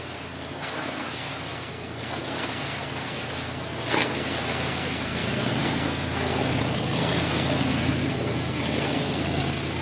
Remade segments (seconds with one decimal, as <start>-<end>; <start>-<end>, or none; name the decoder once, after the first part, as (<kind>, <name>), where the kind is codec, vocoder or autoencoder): 0.0-9.8 (codec, SNAC)